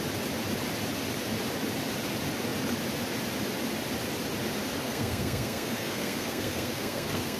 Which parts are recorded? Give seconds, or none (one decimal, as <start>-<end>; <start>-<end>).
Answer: 0.0-4.8